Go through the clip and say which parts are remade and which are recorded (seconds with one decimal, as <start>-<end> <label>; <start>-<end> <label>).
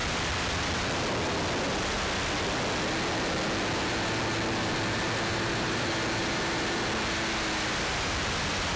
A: 0.0-5.3 recorded; 5.3-5.9 remade; 5.9-8.8 recorded